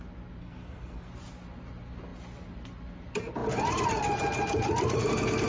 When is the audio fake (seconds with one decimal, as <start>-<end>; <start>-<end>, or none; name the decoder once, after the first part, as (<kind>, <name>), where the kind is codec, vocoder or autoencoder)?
0.4-1.1 (codec, SNAC)